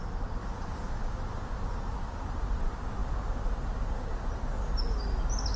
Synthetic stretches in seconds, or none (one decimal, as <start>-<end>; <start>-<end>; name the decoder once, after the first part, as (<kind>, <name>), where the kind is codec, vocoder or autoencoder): none